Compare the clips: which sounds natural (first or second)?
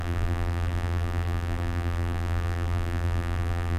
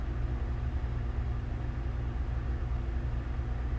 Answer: second